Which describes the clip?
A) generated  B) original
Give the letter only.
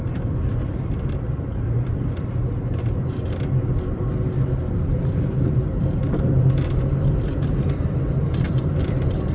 A